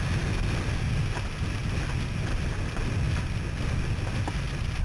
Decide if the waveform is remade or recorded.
recorded